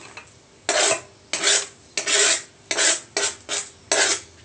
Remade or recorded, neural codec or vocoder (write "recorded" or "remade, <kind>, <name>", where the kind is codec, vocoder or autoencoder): recorded